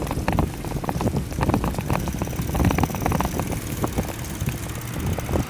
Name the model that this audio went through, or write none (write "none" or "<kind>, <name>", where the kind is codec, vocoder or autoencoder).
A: none